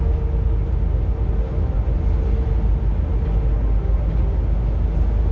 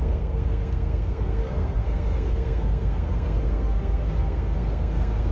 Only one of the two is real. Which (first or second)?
first